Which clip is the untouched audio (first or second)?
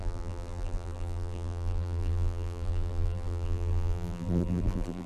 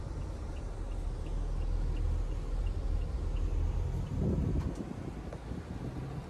second